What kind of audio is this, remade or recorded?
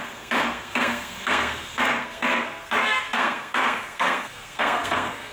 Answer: remade